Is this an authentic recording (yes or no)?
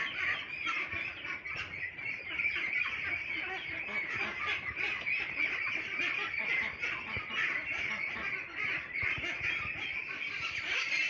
no